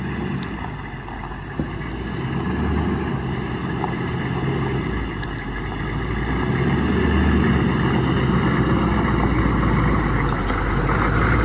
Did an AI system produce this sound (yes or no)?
no